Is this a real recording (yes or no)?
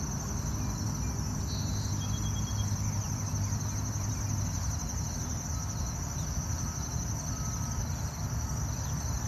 yes